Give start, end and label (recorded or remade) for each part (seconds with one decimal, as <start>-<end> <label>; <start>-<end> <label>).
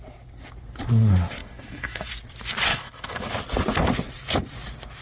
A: 0.0-1.4 recorded; 1.4-2.1 remade; 2.1-2.7 recorded; 2.7-3.3 remade; 3.3-5.0 recorded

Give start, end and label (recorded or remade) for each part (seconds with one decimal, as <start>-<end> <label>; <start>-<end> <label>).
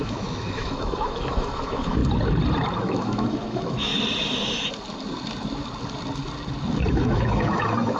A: 0.0-2.0 remade; 2.0-2.7 recorded; 2.7-3.9 remade; 3.9-6.9 recorded; 6.9-8.0 remade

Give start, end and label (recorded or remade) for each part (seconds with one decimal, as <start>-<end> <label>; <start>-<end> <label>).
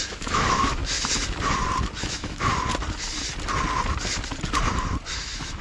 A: 0.0-0.8 remade; 0.8-2.0 recorded; 2.0-2.5 remade; 2.5-5.1 recorded; 5.1-5.6 remade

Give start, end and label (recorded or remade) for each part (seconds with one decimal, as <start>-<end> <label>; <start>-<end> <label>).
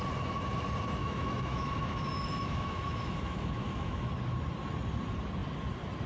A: 0.0-1.0 recorded; 1.0-4.1 remade; 4.1-6.1 recorded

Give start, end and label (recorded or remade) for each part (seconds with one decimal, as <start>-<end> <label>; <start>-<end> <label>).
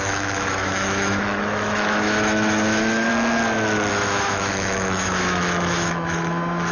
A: 0.0-3.1 remade; 3.1-3.9 recorded; 3.9-6.7 remade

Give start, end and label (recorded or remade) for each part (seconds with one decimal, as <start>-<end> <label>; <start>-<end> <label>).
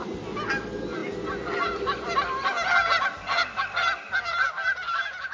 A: 0.0-5.3 recorded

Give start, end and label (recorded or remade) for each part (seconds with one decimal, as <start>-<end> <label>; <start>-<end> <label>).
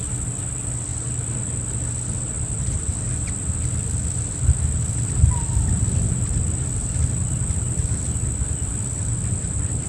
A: 0.0-9.9 recorded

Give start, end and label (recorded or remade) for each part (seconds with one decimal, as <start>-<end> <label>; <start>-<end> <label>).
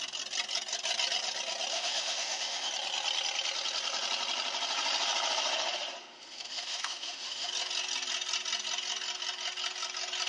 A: 0.0-1.7 recorded; 1.7-2.7 remade; 2.7-6.0 recorded; 6.0-7.5 remade; 7.5-10.3 recorded